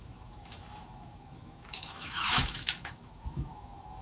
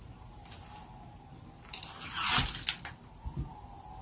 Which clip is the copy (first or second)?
first